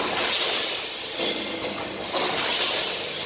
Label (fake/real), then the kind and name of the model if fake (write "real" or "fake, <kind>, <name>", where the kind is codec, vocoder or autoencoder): real